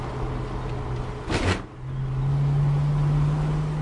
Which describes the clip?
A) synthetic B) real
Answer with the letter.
B